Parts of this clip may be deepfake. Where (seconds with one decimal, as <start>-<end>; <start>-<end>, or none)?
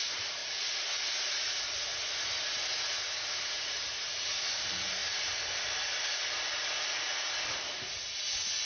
0.0-0.4; 3.6-5.0